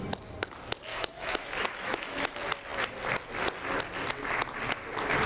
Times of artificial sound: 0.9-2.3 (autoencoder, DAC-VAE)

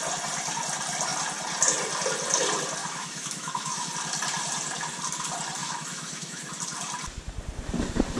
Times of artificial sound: 2.8-3.9 (autoencoder, DAC-VAE); 5.6-6.5

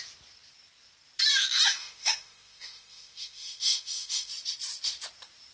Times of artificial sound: 1.8-4.3 (autoencoder, DAC-VAE)